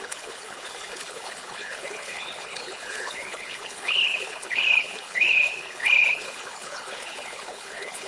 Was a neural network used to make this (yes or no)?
yes